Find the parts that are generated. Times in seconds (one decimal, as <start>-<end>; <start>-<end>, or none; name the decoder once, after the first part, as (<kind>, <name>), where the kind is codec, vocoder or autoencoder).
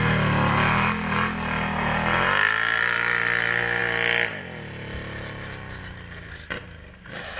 none